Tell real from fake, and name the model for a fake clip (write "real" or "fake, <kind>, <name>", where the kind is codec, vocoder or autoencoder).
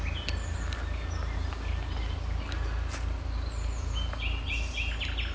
real